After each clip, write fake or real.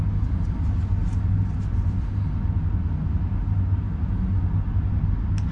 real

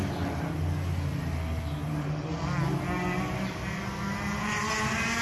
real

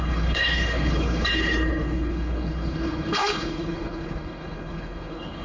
fake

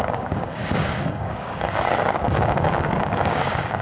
fake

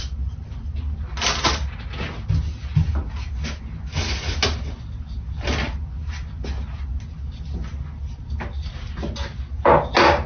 real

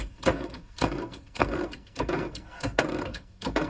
fake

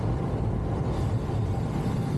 real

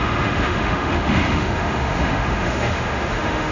fake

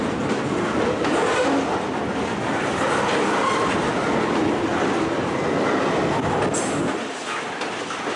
real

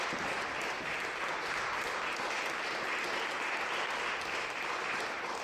real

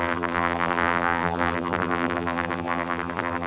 fake